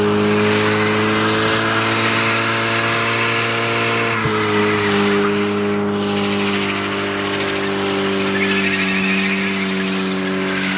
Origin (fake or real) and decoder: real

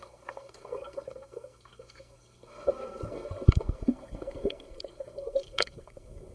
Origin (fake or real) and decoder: fake, codec, SNAC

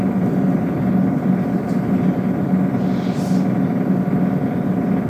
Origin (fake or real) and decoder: real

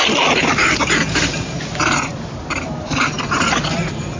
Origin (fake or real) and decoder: real